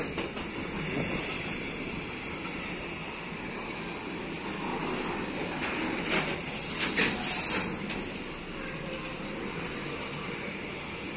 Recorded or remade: recorded